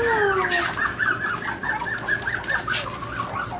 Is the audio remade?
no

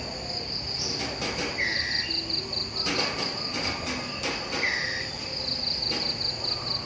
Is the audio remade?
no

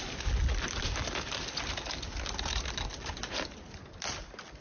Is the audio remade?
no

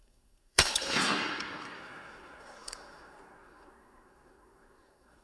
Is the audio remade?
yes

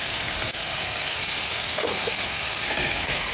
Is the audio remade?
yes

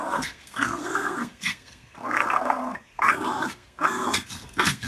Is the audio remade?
yes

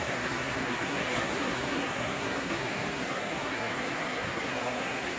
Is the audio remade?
yes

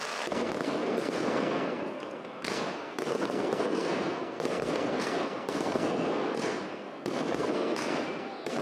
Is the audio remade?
yes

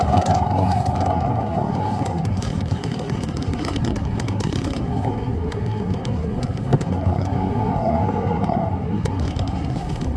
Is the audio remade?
yes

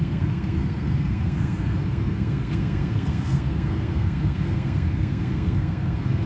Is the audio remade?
yes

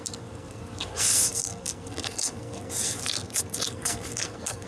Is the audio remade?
yes